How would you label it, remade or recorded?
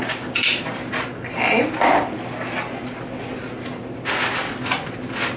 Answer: recorded